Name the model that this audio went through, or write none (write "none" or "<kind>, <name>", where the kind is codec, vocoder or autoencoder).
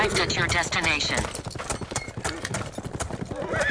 none